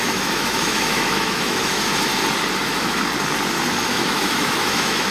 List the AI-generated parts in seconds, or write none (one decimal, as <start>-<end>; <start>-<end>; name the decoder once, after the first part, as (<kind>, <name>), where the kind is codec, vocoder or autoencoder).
0.0-2.1 (autoencoder, DAC-VAE); 2.6-3.0; 3.9-5.1